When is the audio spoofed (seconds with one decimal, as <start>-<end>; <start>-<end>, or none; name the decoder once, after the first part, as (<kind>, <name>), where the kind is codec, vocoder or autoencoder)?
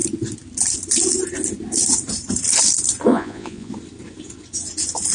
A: 3.1-3.7 (vocoder, Vocos)